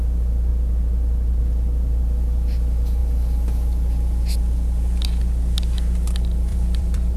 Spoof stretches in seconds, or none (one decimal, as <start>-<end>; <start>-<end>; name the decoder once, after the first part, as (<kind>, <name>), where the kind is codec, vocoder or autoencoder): 6.5-7.2 (vocoder, BigVGAN v2)